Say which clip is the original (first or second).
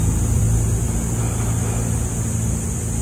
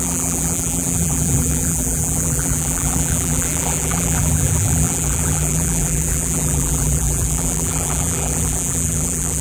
first